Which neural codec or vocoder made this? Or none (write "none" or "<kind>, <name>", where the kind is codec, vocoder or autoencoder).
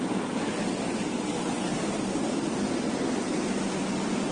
none